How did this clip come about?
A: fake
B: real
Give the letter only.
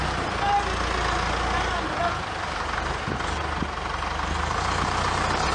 B